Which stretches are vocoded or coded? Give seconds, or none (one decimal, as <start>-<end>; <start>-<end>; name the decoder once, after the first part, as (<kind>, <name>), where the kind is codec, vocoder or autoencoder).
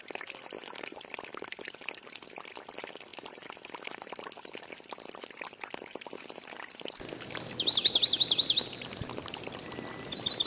none